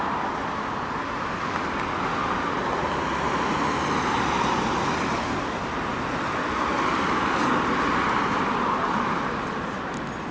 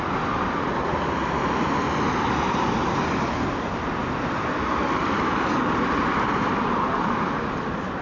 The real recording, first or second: first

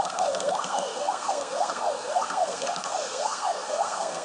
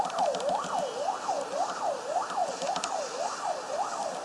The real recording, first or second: second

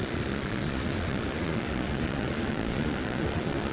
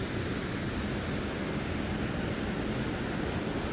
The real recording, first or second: second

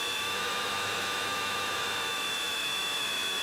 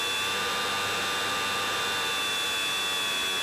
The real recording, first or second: second